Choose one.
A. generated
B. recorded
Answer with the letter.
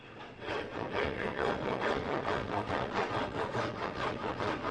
A